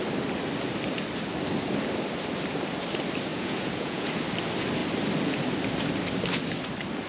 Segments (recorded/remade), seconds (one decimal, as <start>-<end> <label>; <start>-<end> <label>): 0.0-3.3 recorded; 3.3-4.1 remade; 4.1-7.1 recorded

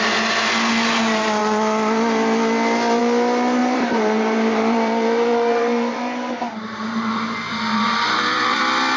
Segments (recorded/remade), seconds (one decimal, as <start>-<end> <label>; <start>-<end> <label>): 0.0-3.6 recorded; 3.6-8.6 remade; 8.6-9.0 recorded

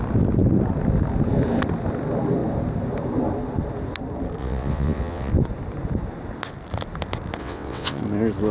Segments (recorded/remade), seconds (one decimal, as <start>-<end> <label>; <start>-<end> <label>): 0.0-4.4 recorded; 4.4-5.3 remade; 5.3-7.4 recorded; 7.4-8.0 remade; 8.0-8.5 recorded

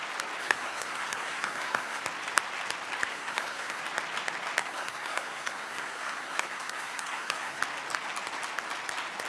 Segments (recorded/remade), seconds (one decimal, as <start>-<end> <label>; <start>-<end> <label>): 0.0-0.4 recorded; 0.4-2.0 remade; 2.0-3.1 recorded; 3.1-3.8 remade; 3.8-4.6 recorded; 4.6-7.6 remade; 7.6-9.3 recorded

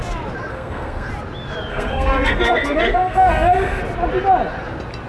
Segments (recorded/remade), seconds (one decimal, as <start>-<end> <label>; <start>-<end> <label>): 0.0-0.5 recorded; 0.5-1.1 remade; 1.1-1.7 recorded; 1.7-3.8 remade; 3.8-5.1 recorded